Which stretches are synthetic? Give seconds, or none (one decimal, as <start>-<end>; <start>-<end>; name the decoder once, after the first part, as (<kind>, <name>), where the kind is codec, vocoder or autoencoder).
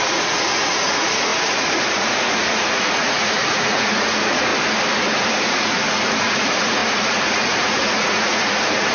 0.0-4.5 (vocoder, Vocos); 5.5-8.9